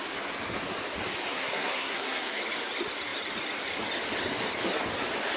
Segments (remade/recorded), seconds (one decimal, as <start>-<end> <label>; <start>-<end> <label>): 0.0-1.3 recorded; 1.3-2.4 remade; 2.4-5.4 recorded